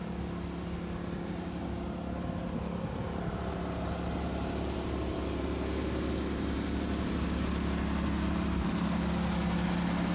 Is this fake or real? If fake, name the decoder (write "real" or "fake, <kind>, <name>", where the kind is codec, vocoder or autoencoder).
real